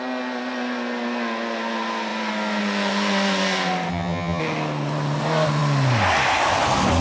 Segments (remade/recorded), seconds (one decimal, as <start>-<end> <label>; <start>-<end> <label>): 0.0-3.9 recorded; 3.9-4.4 remade; 4.4-7.0 recorded

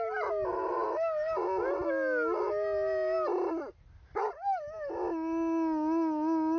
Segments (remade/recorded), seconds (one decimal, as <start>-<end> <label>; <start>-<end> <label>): 0.0-6.6 recorded

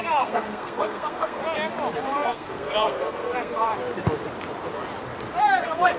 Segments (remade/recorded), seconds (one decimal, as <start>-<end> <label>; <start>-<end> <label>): 0.0-1.4 remade; 1.4-2.0 recorded; 2.0-3.7 remade; 3.7-5.4 recorded; 5.4-6.0 remade

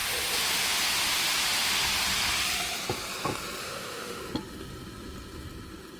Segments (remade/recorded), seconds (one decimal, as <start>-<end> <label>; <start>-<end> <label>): 0.0-3.6 recorded; 3.6-4.2 remade; 4.2-6.0 recorded